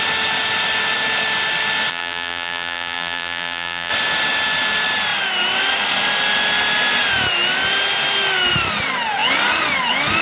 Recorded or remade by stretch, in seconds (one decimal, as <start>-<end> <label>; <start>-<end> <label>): 0.0-1.9 recorded; 1.9-3.9 remade; 3.9-10.2 recorded